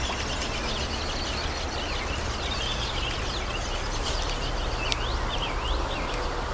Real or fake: real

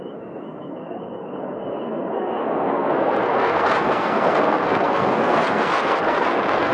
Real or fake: fake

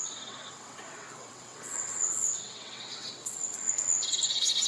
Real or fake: fake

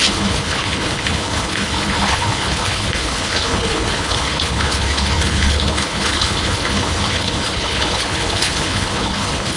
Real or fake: fake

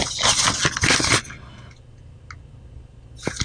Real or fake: real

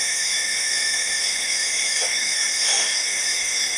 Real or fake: fake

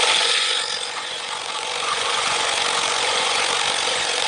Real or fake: fake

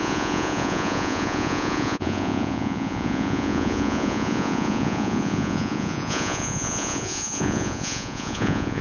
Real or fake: fake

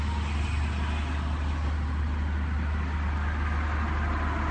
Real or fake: real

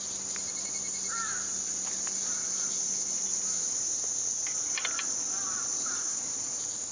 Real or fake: real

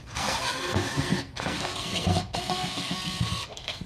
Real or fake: fake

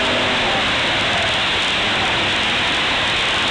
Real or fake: real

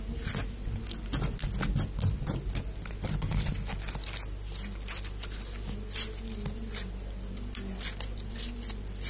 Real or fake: real